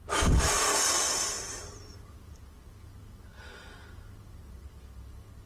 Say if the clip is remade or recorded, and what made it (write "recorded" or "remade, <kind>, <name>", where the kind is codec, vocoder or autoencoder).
recorded